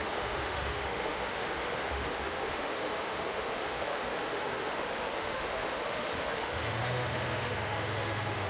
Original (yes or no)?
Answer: no